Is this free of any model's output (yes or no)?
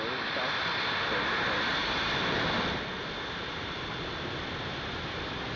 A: yes